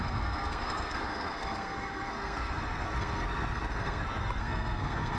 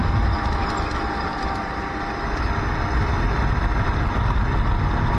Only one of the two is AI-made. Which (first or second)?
first